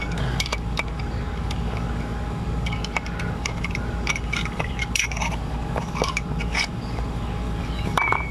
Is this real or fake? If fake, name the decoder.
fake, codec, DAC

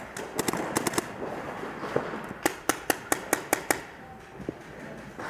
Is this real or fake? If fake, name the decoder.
real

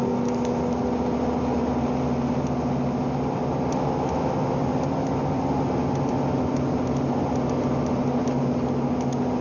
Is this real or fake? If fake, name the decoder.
real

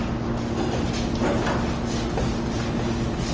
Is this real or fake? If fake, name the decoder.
real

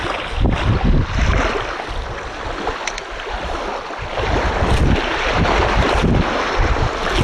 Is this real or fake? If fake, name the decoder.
real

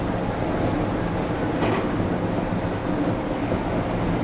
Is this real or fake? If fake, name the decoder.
real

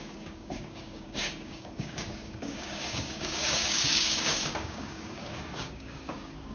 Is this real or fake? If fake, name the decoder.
fake, codec, DAC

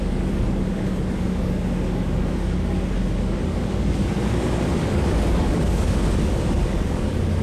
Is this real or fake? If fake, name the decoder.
fake, codec, DAC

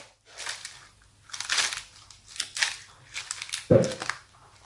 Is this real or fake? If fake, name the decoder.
real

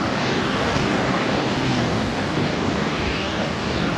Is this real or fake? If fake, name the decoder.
fake, codec, DAC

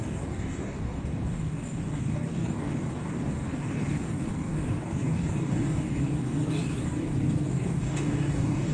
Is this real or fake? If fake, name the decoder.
fake, codec, DAC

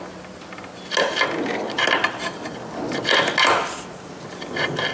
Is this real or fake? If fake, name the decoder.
real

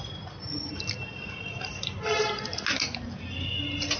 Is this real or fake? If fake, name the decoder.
real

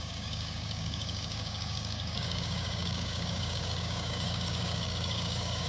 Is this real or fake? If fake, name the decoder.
fake, codec, DAC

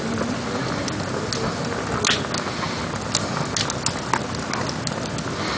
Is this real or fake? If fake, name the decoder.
real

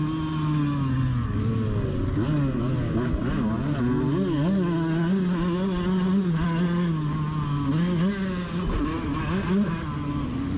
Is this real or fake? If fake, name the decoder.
real